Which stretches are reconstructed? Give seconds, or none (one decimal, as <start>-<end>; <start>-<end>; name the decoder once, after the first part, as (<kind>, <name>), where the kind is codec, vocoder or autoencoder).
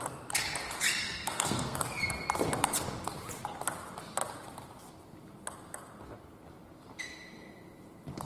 1.0-1.8 (codec, SNAC)